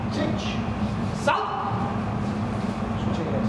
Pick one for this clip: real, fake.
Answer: real